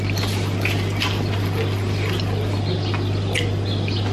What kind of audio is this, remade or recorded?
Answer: recorded